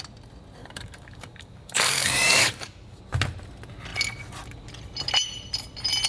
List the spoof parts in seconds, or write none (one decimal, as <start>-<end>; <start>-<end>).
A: 0.6-3.0